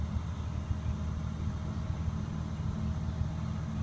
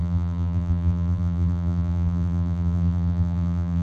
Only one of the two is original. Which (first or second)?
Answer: first